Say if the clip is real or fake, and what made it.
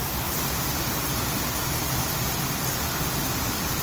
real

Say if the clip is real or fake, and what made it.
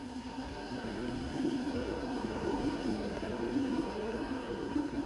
fake, codec, SNAC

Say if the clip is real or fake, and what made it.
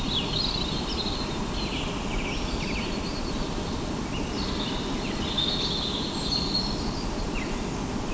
real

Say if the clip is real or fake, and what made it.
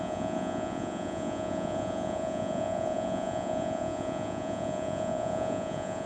fake, vocoder, Vocos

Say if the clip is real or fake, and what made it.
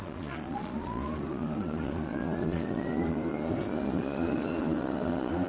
fake, vocoder, Vocos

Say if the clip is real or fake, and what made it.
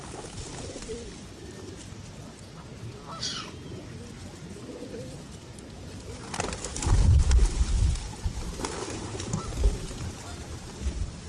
real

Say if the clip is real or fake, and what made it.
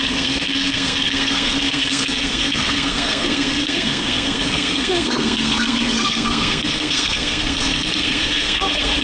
fake, codec, SNAC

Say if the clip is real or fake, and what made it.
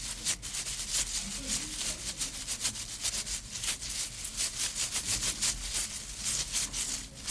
real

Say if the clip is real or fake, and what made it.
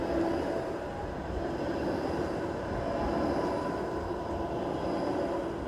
real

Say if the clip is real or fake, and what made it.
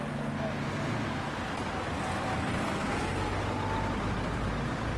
real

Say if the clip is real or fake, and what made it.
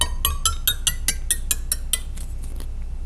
real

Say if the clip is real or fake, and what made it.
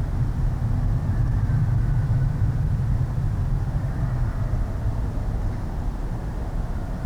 real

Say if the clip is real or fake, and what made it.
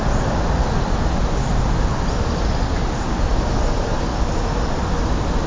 real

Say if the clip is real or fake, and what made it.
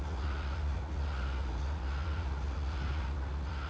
fake, vocoder, Vocos